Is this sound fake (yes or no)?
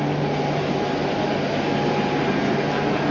no